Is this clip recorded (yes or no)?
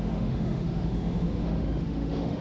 no